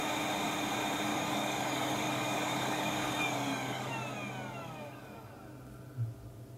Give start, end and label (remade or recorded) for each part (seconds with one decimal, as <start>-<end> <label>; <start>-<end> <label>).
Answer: 0.0-1.1 recorded; 1.1-3.9 remade; 3.9-4.6 recorded; 4.6-5.3 remade; 5.3-6.6 recorded